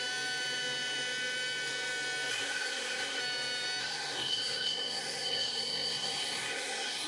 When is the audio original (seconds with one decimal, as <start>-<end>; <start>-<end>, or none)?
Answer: 0.0-2.3; 3.2-3.8